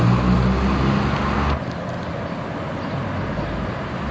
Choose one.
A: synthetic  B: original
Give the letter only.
B